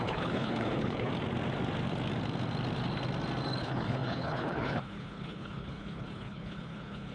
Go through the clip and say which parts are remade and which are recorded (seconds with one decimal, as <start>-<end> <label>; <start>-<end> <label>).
0.0-1.1 remade; 1.1-3.6 recorded; 3.6-7.1 remade